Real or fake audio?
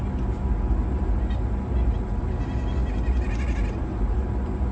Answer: real